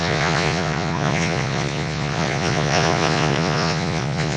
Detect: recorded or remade remade